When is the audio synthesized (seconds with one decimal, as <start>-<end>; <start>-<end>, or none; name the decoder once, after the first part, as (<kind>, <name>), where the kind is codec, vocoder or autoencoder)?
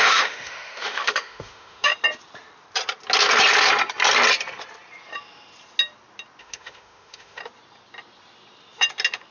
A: 0.0-1.9 (autoencoder, DAC-VAE); 6.4-7.4